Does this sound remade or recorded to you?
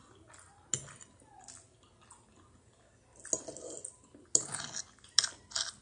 recorded